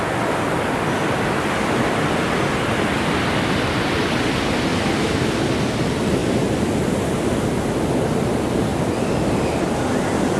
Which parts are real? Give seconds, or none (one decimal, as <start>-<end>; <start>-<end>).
0.0-10.4